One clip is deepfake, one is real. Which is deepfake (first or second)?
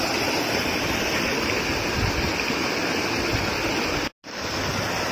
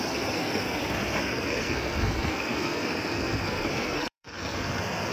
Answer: second